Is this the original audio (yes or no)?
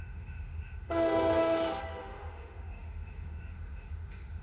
no